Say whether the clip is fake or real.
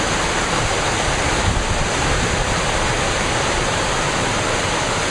real